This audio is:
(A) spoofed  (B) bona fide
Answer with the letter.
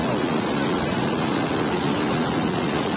A